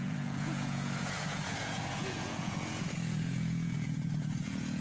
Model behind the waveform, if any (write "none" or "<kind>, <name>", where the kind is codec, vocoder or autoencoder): vocoder, Vocos